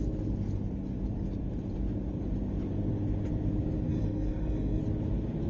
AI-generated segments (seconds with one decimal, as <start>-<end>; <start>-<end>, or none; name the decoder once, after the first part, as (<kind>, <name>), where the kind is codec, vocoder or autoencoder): 3.9-4.8 (codec, SNAC)